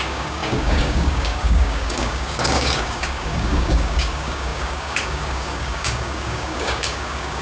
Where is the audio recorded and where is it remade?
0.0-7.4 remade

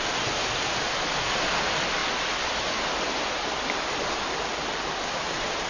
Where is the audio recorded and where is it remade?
0.0-5.7 recorded

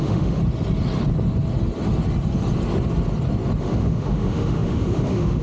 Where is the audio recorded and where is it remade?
0.0-0.4 remade; 0.4-3.6 recorded; 3.6-5.4 remade